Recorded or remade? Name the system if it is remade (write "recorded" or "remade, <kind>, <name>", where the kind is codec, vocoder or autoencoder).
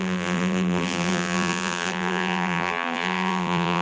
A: remade, vocoder, BigVGAN v2